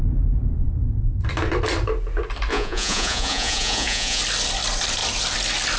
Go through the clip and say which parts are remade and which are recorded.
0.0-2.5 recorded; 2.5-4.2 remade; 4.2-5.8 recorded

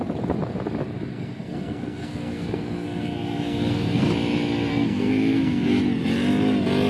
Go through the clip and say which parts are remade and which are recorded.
0.0-1.1 recorded; 1.1-4.1 remade; 4.1-4.7 recorded; 4.7-5.8 remade; 5.8-6.9 recorded

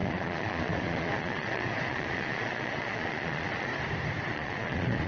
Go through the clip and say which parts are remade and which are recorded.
0.0-3.7 remade; 3.7-4.3 recorded; 4.3-5.1 remade

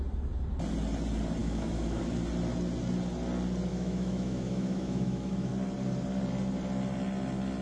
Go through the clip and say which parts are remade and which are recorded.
0.0-1.4 recorded; 1.4-2.0 remade; 2.0-3.7 recorded; 3.7-5.5 remade; 5.5-7.6 recorded